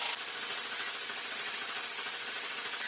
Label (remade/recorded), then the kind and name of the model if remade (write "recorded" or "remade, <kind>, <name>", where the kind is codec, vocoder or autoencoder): recorded